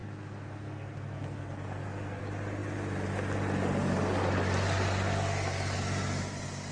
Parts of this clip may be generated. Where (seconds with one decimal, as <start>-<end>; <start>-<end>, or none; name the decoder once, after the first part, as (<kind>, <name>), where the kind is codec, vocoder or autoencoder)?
0.0-2.2 (codec, SNAC)